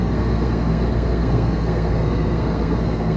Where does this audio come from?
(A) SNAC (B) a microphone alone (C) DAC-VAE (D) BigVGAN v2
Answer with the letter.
A